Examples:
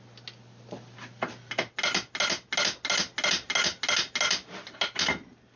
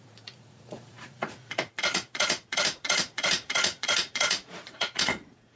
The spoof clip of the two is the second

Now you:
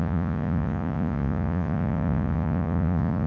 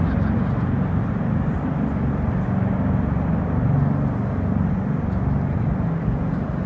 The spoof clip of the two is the first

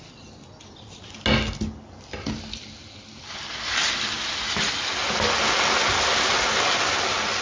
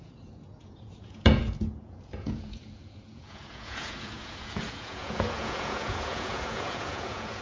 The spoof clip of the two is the second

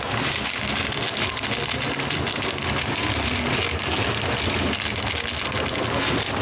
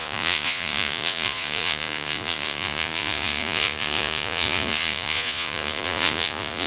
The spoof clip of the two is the second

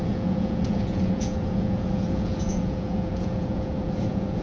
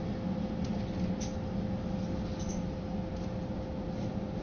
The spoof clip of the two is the first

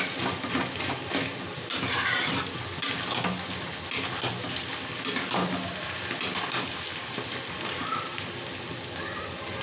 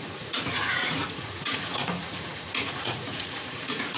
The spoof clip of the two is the second